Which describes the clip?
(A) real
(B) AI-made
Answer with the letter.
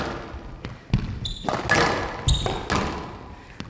A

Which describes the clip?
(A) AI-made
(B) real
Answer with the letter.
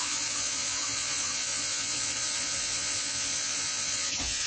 A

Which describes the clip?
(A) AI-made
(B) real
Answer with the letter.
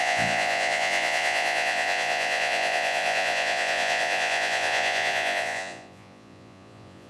A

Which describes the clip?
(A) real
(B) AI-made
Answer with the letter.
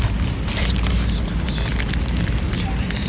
A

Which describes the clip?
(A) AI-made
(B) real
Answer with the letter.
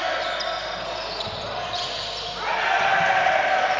B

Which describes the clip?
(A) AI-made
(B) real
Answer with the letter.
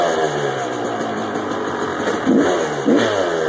B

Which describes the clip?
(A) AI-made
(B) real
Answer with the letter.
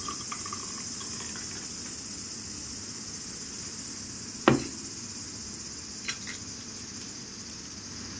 B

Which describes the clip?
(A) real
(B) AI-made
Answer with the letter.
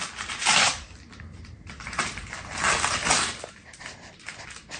A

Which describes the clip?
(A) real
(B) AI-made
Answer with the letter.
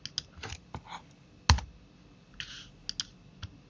A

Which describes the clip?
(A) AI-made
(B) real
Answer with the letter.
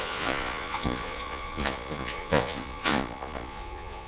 A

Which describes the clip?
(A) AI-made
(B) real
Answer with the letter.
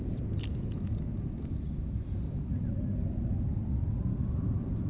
B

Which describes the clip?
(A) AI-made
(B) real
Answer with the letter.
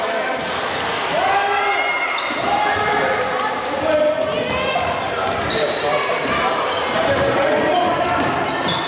B